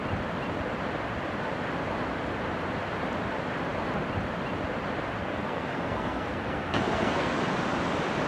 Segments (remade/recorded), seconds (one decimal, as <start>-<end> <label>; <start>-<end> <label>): 0.0-5.2 recorded; 5.2-7.4 remade; 7.4-8.3 recorded